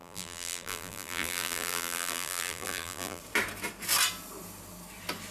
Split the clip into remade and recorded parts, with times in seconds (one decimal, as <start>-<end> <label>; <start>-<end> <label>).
0.0-3.2 remade; 3.2-5.3 recorded